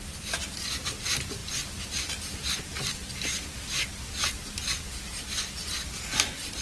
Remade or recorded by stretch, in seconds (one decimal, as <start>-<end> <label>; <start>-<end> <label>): 0.0-6.6 recorded